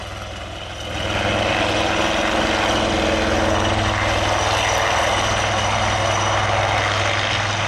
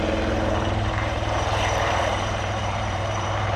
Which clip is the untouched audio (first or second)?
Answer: first